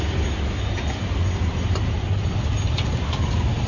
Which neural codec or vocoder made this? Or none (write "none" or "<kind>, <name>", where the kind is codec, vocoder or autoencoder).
none